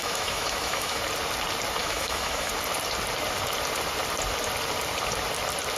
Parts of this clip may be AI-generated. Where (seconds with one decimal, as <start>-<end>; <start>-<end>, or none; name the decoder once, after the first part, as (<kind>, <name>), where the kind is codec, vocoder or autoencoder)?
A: 0.0-1.0 (autoencoder, DAC-VAE); 1.8-2.5